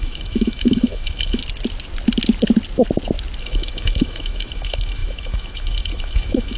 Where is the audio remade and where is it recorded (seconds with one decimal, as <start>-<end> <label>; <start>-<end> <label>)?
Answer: 0.0-1.4 remade; 1.4-3.4 recorded; 3.4-6.6 remade